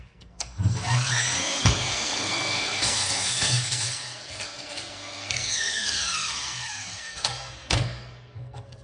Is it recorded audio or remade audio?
remade